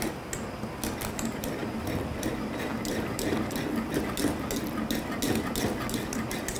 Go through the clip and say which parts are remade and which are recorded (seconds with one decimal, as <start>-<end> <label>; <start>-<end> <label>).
0.0-6.6 recorded